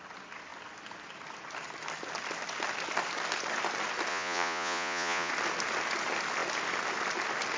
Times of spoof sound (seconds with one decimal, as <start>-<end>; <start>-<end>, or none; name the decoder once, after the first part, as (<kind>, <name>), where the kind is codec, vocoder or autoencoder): 4.1-5.3 (vocoder, Vocos)